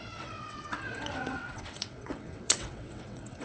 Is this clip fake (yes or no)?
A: yes